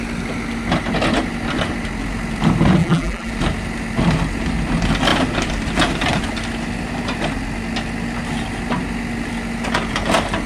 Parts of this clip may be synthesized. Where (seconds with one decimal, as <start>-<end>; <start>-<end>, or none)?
2.8-3.3